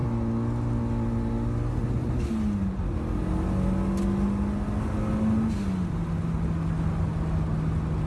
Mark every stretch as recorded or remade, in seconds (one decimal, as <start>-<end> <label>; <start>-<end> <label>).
0.0-8.1 recorded